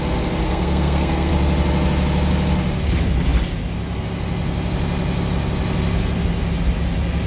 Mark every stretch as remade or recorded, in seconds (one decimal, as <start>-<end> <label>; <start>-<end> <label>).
0.0-0.4 recorded; 0.4-1.3 remade; 1.3-7.3 recorded